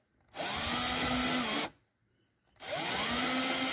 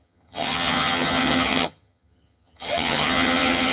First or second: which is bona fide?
first